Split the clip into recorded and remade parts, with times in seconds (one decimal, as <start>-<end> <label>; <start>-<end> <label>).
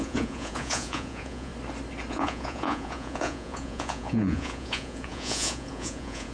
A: 0.0-1.5 remade; 1.5-2.1 recorded; 2.1-6.3 remade